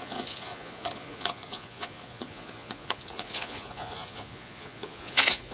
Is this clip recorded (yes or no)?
no